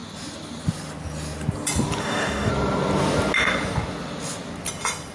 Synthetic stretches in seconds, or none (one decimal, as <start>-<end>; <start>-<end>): 2.0-2.5